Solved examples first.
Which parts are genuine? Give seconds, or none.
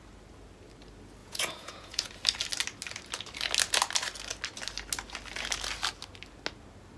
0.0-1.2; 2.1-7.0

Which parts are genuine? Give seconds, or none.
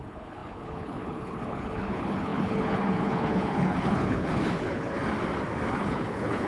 5.0-5.7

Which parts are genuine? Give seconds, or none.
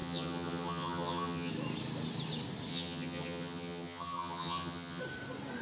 1.5-2.7; 5.0-5.6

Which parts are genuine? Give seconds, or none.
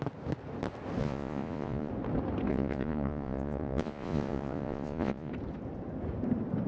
0.0-1.0; 1.9-2.5; 5.3-6.7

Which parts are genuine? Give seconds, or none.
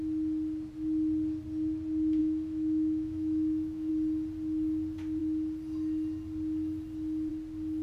0.0-2.2; 3.9-7.8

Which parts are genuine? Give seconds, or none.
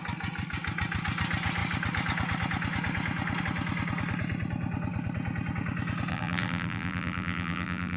0.0-6.1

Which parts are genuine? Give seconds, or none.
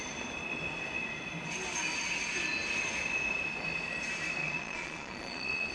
0.0-4.4